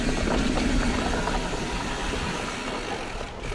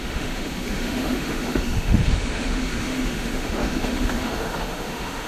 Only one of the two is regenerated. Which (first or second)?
second